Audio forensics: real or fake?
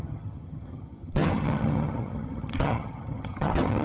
fake